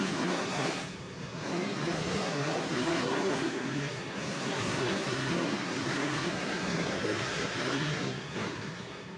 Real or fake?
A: fake